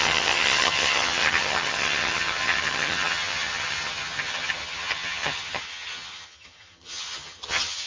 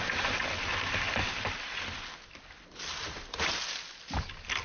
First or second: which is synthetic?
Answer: first